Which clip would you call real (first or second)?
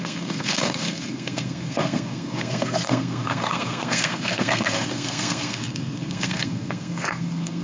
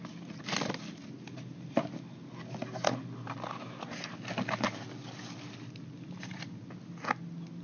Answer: second